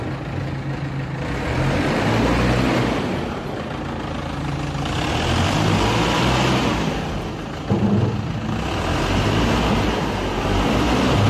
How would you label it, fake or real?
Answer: real